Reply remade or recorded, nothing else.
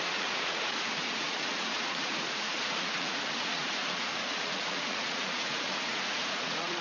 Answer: remade